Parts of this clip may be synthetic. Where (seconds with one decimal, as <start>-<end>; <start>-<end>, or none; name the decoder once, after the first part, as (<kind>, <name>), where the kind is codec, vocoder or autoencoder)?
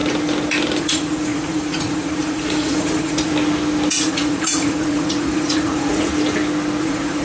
0.8-3.3 (vocoder, Vocos); 3.9-6.1; 6.8-7.2